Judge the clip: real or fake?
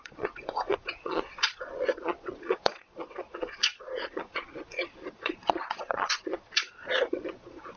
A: fake